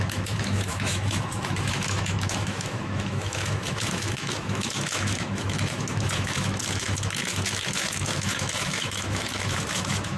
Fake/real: fake